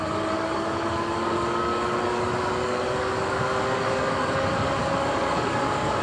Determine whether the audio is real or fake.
fake